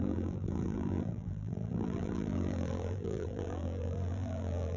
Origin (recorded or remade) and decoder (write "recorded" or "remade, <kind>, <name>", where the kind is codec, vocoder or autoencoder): remade, vocoder, BigVGAN v2